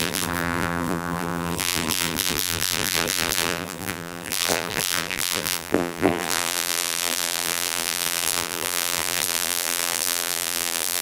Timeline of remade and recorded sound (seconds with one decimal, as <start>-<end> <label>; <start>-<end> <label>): 0.0-11.0 remade